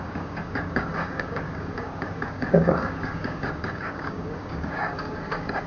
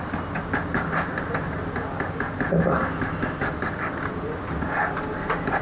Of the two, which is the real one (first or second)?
second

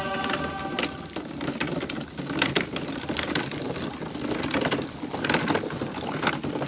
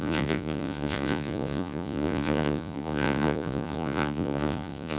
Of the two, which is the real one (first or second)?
first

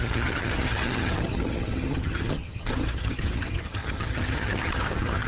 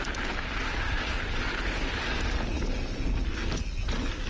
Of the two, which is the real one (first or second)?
second